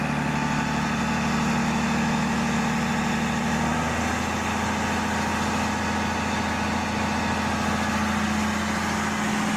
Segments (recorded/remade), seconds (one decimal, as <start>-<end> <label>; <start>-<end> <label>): 0.0-1.6 recorded; 1.6-2.6 remade; 2.6-9.6 recorded